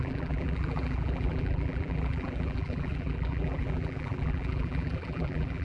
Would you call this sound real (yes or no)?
no